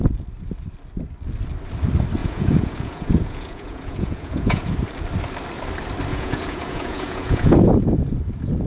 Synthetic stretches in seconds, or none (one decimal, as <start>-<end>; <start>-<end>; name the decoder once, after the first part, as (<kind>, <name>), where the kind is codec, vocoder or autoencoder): 2.2-4.7 (vocoder, Vocos); 6.1-7.9